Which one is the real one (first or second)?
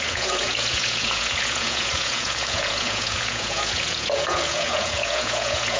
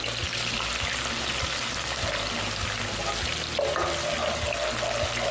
second